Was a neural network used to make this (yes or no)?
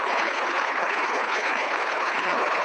yes